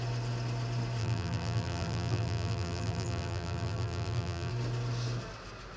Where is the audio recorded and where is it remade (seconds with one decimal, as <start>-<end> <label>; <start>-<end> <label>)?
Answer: 0.0-1.0 recorded; 1.0-4.5 remade; 4.5-5.8 recorded